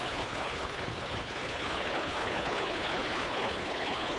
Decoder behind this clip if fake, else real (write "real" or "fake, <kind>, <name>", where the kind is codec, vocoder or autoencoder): fake, codec, HILCodec